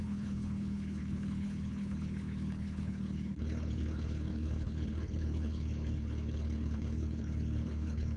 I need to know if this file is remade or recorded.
remade